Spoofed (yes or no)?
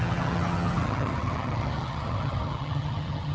yes